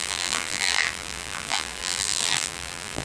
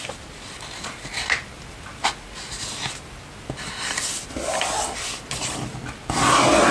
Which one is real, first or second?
second